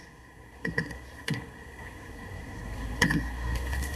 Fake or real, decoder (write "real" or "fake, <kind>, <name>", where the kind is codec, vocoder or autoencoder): fake, codec, SNAC